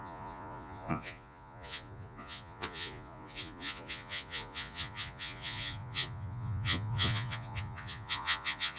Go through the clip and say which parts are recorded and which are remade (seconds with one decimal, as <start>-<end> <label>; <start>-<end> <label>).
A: 0.0-8.8 remade